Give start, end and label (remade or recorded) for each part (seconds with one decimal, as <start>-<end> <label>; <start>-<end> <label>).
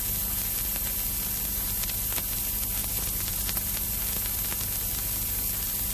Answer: 0.0-2.8 recorded; 2.8-3.6 remade; 3.6-5.9 recorded